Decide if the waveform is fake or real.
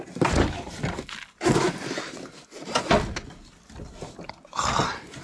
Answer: real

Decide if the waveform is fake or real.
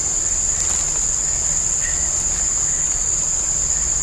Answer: real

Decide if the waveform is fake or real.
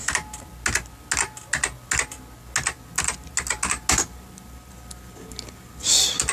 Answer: real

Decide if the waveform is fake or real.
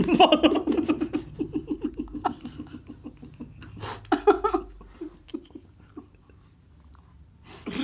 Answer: real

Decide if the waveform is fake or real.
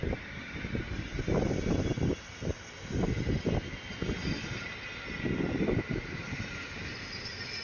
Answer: real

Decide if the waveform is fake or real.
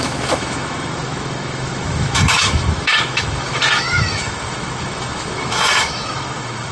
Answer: fake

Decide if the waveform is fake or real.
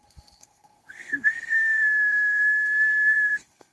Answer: fake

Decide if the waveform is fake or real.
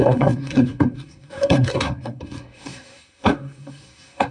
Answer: fake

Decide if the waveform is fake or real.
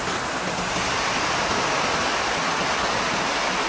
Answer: real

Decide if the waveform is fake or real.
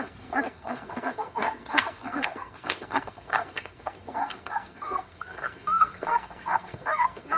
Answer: fake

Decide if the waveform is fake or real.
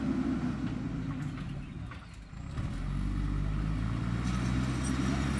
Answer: real